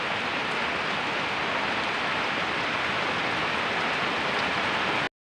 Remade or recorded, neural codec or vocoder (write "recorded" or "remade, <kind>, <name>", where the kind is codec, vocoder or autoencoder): recorded